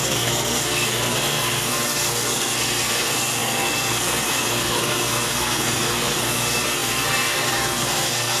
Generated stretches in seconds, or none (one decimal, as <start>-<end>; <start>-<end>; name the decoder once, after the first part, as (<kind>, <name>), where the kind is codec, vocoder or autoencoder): 0.0-8.4 (codec, SNAC)